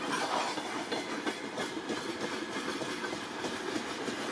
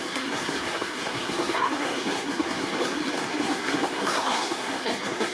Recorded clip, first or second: first